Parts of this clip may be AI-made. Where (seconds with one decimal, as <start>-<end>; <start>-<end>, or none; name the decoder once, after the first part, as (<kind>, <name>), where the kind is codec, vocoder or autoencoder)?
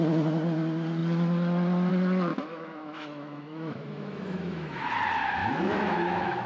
2.3-4.9 (autoencoder, DAC-VAE); 5.4-6.5